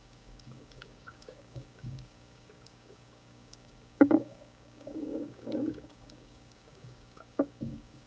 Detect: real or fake fake